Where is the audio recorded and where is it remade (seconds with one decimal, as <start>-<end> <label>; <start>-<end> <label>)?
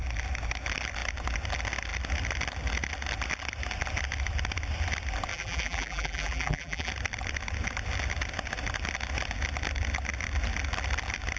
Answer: 0.0-5.3 recorded; 5.3-6.9 remade; 6.9-11.4 recorded